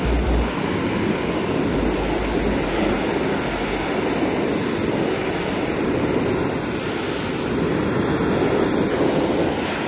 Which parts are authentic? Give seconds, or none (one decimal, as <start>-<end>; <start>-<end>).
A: 0.0-9.9